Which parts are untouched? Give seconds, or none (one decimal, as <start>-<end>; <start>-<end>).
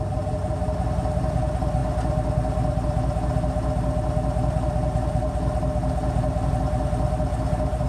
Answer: 0.0-7.9